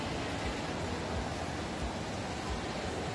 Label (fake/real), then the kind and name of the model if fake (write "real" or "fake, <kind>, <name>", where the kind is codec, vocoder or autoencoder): real